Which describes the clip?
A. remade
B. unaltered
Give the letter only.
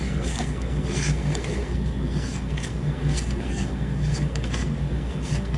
A